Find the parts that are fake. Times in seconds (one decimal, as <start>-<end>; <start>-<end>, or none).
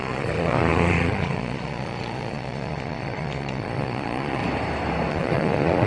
0.0-4.4; 5.1-5.9